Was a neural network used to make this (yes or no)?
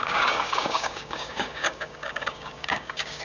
yes